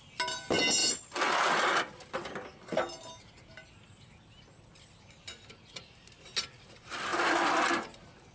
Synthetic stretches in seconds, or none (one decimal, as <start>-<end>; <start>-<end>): none